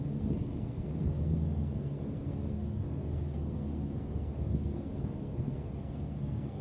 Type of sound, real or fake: fake